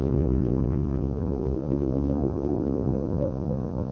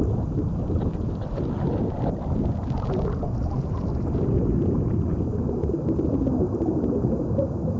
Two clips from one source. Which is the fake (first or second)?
first